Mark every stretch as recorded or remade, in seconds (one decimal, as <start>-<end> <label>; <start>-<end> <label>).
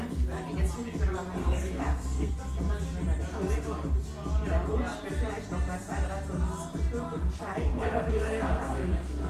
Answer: 0.0-1.4 recorded; 1.4-2.3 remade; 2.3-7.7 recorded; 7.7-9.3 remade